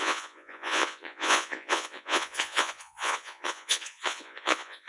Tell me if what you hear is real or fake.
fake